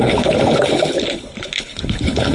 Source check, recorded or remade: remade